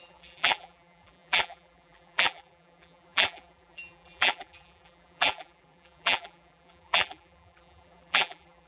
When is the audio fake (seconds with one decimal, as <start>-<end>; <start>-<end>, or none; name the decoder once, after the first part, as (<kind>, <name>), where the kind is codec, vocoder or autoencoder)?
0.0-8.7 (vocoder, BigVGAN v2)